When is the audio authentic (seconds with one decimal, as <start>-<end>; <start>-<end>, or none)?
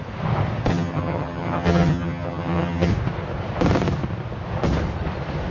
0.0-0.7; 2.9-5.5